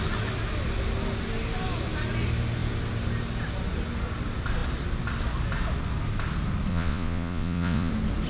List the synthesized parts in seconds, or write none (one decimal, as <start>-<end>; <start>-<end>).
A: 6.7-7.9